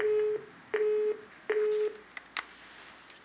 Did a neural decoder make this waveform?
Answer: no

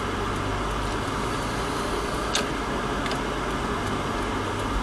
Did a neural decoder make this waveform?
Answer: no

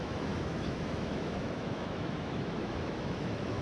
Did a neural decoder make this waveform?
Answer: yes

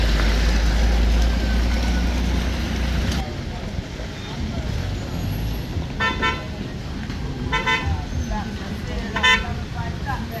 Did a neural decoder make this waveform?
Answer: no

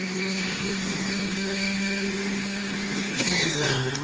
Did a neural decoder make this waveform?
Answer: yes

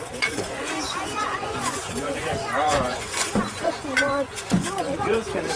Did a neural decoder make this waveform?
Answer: yes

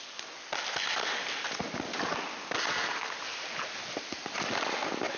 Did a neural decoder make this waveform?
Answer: no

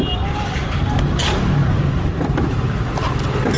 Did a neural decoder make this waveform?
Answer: no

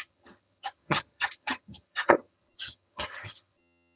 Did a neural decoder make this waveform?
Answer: yes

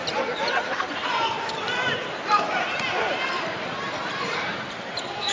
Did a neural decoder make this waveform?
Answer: yes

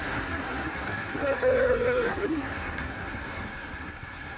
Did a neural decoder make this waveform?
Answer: yes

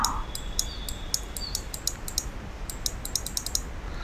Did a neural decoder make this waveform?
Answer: no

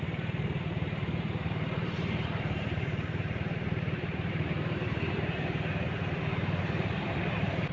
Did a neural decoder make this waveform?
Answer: yes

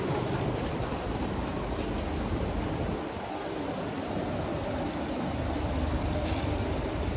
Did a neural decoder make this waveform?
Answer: no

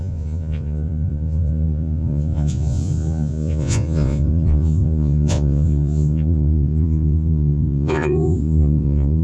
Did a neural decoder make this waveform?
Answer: yes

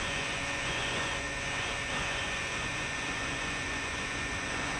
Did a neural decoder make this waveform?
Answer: yes